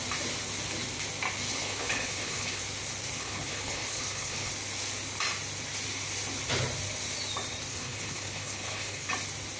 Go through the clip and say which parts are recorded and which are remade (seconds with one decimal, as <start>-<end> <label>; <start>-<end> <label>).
0.0-1.5 recorded; 1.5-2.6 remade; 2.6-3.2 recorded; 3.2-4.5 remade; 4.5-7.7 recorded; 7.7-9.1 remade; 9.1-9.6 recorded